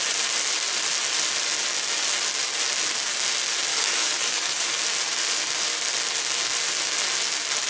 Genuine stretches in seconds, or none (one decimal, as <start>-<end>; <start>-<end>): 0.0-3.7; 4.8-7.7